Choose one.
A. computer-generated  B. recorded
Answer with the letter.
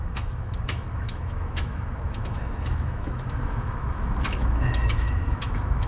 A